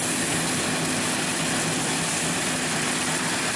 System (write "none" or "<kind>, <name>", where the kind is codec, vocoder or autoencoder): none